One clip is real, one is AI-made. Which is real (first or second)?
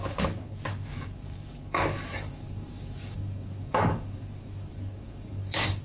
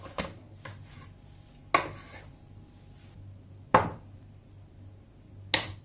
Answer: second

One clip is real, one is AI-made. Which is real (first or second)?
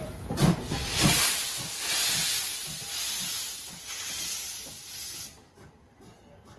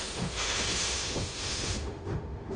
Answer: first